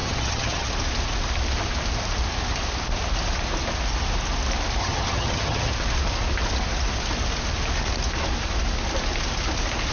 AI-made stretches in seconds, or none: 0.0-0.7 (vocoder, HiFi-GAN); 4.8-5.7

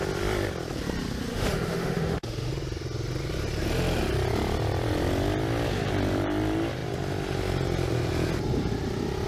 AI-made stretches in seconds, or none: 1.3-2.5 (autoencoder, DAC-VAE)

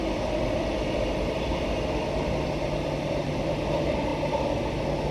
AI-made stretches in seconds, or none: 0.0-4.1 (vocoder, BigVGAN v2)

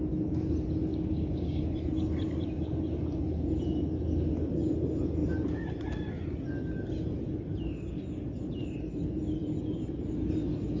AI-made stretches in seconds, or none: 0.9-1.6 (codec, DAC)

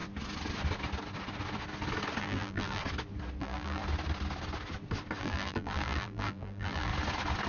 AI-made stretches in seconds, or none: 2.2-2.8 (vocoder, BigVGAN v2); 3.4-3.8; 5.2-6.9